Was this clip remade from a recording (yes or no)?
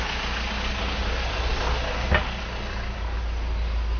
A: no